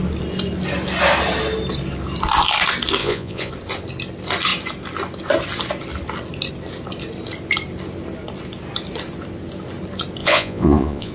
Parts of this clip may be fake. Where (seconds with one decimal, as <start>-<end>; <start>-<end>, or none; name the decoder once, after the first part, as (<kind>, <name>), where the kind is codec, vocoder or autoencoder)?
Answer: 3.0-3.5 (vocoder, Vocos); 10.2-11.1